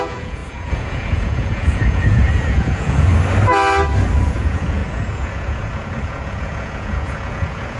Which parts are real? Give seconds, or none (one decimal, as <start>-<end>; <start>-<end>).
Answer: 3.1-4.2